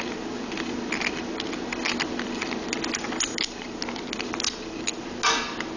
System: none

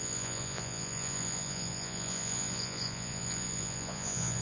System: vocoder, Vocos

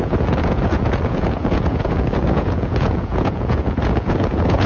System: vocoder, Vocos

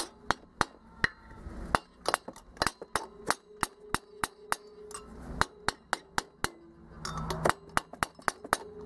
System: none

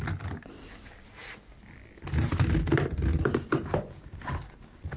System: none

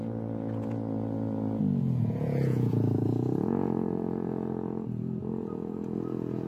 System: vocoder, Vocos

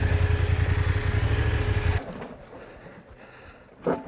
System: none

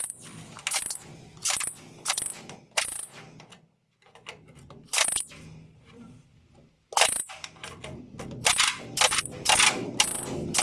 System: none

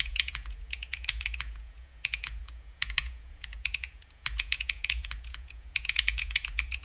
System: vocoder, Vocos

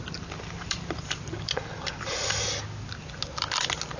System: none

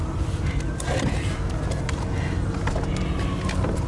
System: none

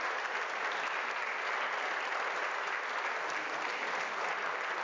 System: none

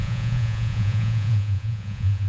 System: vocoder, Vocos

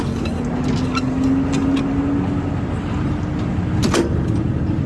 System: none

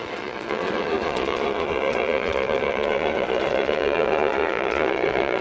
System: vocoder, Vocos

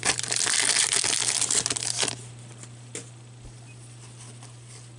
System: none